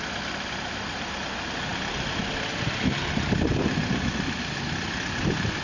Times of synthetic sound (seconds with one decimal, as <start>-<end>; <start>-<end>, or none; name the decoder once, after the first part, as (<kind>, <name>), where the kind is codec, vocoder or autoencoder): none